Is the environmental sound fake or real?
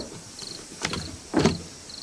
fake